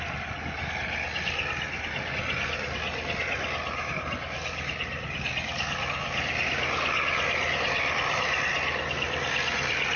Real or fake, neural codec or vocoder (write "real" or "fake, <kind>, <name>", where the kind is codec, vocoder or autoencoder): real